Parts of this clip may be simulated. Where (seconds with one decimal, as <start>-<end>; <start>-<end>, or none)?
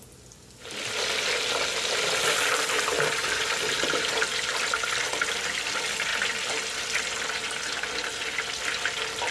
none